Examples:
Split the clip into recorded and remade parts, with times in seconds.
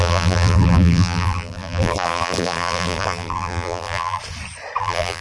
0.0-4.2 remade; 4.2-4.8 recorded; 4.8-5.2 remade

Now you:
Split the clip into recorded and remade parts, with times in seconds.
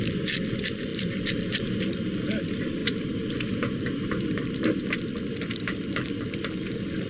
0.0-7.1 remade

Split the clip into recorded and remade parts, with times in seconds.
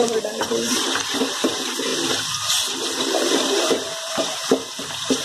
0.0-1.9 remade; 1.9-3.0 recorded; 3.0-4.3 remade; 4.3-4.8 recorded; 4.8-5.2 remade